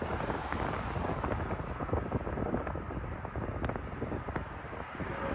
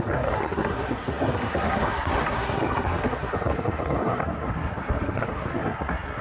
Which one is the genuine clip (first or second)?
first